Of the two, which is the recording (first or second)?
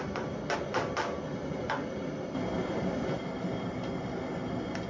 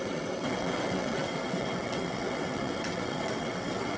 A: first